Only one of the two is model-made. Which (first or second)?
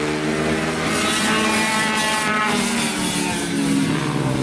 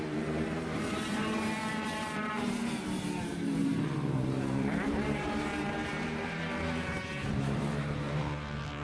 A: second